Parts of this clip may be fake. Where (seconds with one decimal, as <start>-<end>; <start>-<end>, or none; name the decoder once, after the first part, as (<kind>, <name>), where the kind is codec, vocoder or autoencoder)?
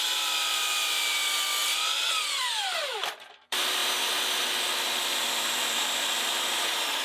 0.0-1.2 (vocoder, BigVGAN v2); 2.4-3.8; 5.2-7.0